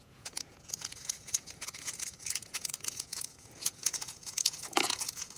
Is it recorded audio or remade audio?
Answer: remade